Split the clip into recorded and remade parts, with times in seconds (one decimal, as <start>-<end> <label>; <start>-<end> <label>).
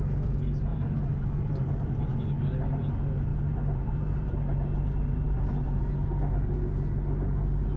0.0-0.7 recorded; 0.7-2.2 remade; 2.2-3.3 recorded; 3.3-5.8 remade; 5.8-7.8 recorded